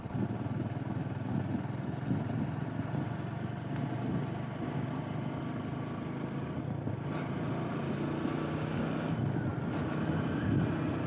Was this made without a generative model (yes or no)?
yes